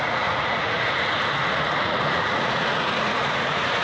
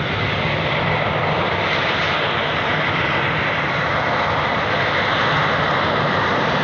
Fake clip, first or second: first